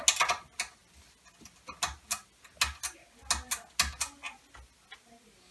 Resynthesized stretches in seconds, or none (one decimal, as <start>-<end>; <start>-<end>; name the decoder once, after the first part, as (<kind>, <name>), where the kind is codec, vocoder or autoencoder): none